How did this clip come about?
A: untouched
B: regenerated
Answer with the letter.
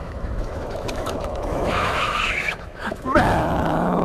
B